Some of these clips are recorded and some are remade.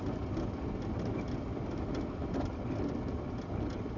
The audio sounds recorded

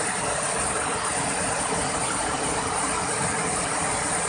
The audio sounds recorded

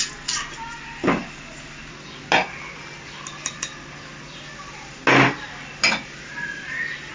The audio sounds recorded